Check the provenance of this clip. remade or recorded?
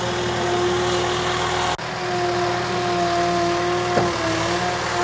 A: recorded